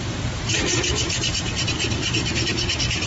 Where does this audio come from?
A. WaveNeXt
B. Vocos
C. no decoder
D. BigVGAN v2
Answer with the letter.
D